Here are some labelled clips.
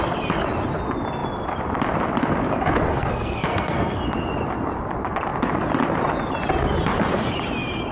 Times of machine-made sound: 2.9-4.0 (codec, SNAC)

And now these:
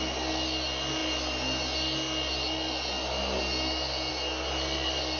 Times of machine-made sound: none

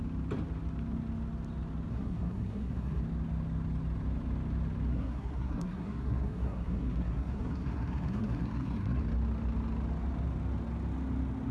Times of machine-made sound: 1.9-3.0 (codec, SNAC); 4.9-9.0

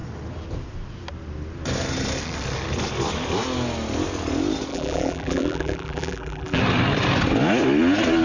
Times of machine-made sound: 4.7-6.6 (vocoder, BigVGAN v2)

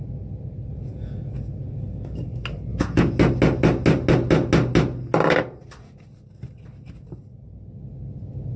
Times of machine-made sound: 0.7-1.4 (vocoder, Vocos); 2.7-3.2

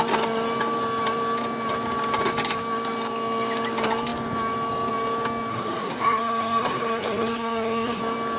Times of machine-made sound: 5.5-8.0 (codec, SNAC)

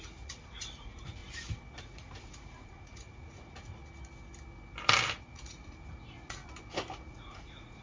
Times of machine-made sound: 0.0-1.2 (vocoder, Vocos); 1.8-3.8; 5.1-6.4; 7.1-7.8